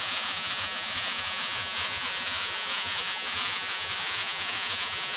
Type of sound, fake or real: fake